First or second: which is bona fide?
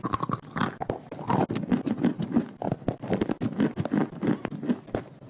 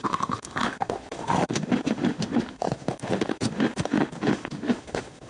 first